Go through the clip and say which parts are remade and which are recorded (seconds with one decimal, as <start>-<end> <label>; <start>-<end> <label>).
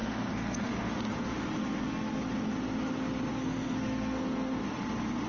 0.0-0.9 remade; 0.9-1.6 recorded; 1.6-2.2 remade; 2.2-3.3 recorded; 3.3-4.6 remade; 4.6-5.3 recorded